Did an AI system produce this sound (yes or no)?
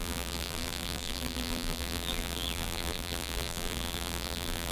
yes